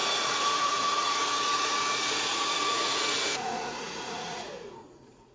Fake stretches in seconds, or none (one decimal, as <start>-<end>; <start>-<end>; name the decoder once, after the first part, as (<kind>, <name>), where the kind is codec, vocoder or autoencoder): 0.0-5.3 (vocoder, Vocos)